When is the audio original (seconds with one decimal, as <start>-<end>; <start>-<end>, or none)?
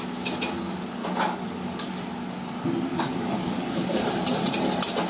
0.0-1.0; 1.9-2.9; 4.1-5.1